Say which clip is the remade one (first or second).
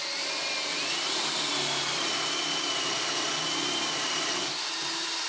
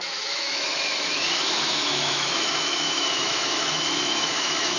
second